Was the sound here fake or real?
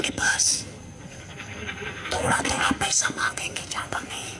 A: fake